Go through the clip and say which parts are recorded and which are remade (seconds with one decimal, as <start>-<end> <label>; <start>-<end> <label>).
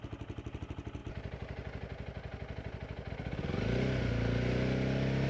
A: 0.0-5.3 recorded